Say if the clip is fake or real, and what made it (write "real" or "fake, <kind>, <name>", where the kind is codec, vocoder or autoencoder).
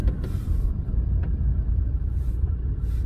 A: fake, vocoder, BigVGAN v2